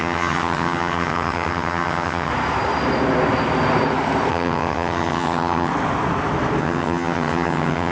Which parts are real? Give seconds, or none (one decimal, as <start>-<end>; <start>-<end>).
2.3-4.3; 5.7-6.6